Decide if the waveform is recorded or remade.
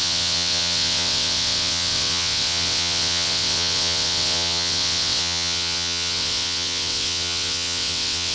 remade